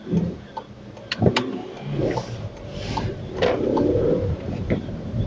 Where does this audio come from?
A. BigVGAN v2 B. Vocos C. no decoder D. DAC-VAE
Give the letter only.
A